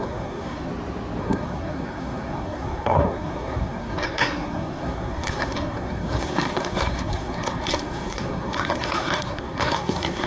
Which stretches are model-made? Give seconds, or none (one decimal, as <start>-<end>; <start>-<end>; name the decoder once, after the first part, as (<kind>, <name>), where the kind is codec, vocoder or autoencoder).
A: 0.0-0.7 (codec, SNAC); 1.2-10.3